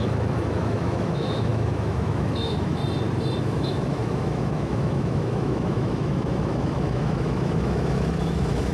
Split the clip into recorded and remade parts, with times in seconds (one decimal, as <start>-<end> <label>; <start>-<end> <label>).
0.0-2.8 remade; 2.8-3.4 recorded; 3.4-8.7 remade

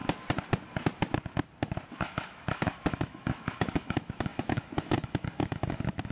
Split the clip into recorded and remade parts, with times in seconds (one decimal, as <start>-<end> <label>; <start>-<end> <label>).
0.0-1.9 recorded; 1.9-6.1 remade